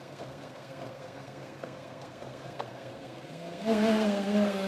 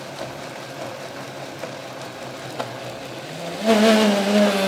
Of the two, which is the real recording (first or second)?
second